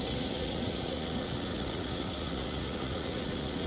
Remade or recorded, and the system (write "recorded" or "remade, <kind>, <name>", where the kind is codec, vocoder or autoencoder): remade, vocoder, Vocos